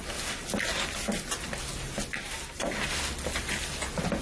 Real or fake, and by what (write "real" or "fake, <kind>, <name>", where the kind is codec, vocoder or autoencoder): real